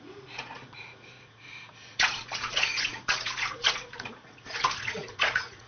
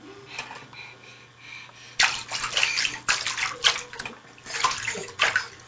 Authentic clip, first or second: second